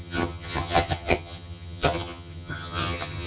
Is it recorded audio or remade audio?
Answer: remade